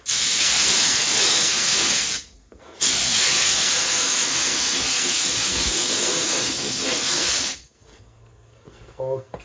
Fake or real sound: fake